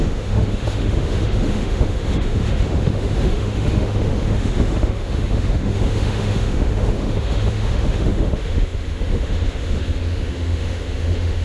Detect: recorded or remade remade